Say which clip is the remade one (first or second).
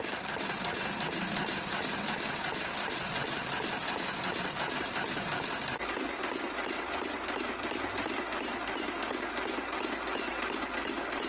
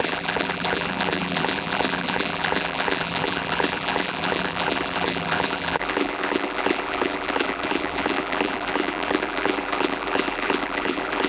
second